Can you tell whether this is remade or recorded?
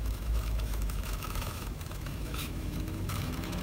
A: remade